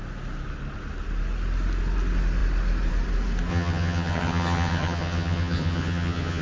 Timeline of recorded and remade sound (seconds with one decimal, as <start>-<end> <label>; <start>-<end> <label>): 0.0-3.5 recorded; 3.5-6.4 remade